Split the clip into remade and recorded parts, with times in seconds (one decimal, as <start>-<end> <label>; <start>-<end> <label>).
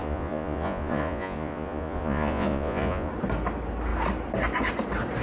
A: 0.0-3.1 remade; 3.1-5.2 recorded